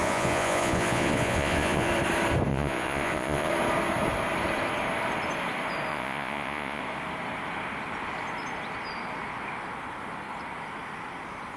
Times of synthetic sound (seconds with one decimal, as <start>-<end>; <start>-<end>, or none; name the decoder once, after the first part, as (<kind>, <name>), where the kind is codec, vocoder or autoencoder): 0.0-1.9 (vocoder, Vocos); 2.5-3.5; 5.9-6.8